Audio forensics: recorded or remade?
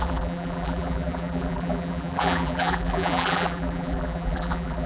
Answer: remade